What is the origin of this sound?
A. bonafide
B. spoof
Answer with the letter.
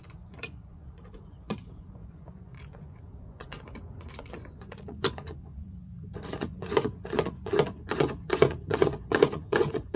B